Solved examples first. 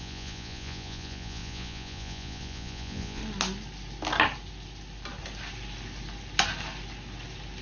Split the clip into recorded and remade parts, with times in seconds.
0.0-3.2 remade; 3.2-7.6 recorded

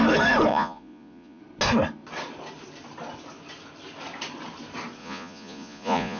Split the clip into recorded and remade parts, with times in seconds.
0.0-0.5 recorded; 0.5-1.4 remade; 1.4-5.0 recorded; 5.0-6.2 remade

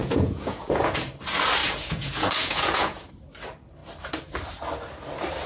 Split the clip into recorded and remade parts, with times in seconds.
0.0-1.1 remade; 1.1-1.6 recorded; 1.6-3.1 remade; 3.1-5.5 recorded

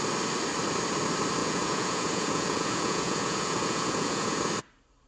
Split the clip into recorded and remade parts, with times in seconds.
0.0-1.4 recorded; 1.4-4.5 remade; 4.5-5.1 recorded

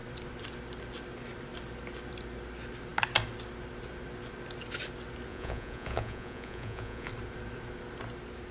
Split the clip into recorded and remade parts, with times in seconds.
0.0-5.3 recorded; 5.3-7.1 remade; 7.1-8.5 recorded

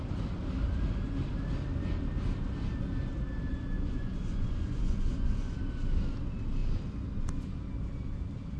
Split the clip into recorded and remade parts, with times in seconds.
0.0-3.5 recorded; 3.5-5.5 remade; 5.5-8.6 recorded

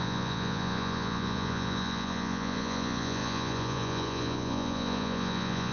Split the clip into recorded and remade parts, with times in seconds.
0.0-5.7 remade